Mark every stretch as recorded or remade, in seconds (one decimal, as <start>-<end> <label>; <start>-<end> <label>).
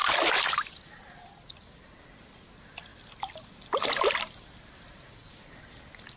0.0-6.2 recorded